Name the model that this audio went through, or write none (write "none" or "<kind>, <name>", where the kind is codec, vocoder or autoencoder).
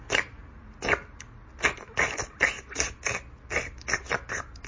none